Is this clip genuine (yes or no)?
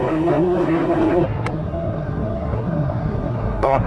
no